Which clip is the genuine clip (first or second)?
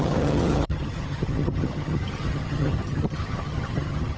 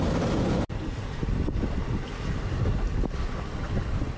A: second